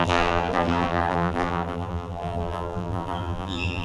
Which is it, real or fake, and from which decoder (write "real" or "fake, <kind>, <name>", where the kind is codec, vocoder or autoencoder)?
fake, vocoder, BigVGAN v2